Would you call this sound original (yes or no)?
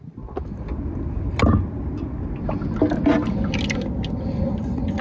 yes